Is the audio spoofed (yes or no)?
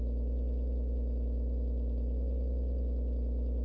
no